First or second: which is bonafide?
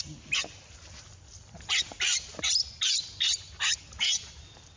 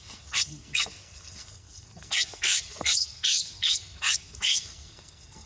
first